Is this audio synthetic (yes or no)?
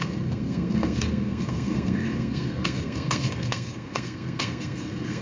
yes